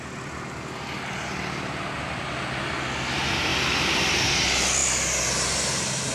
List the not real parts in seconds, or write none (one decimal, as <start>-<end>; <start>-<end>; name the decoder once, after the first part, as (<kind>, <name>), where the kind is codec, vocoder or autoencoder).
3.5-4.3 (vocoder, BigVGAN v2)